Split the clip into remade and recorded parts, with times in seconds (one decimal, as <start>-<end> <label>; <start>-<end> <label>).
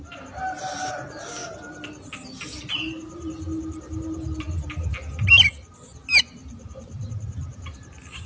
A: 0.0-6.4 recorded; 6.4-7.1 remade; 7.1-8.3 recorded